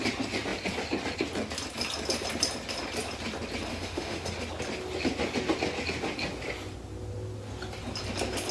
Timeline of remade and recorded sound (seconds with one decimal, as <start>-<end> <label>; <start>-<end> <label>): 0.0-3.7 recorded; 3.7-4.3 remade; 4.3-8.5 recorded